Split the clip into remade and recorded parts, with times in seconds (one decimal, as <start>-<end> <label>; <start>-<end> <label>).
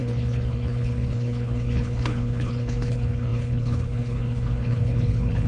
0.0-5.5 remade